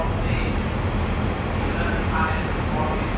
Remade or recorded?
recorded